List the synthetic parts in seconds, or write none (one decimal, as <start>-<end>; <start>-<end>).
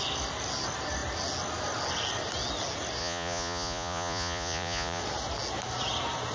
3.0-5.0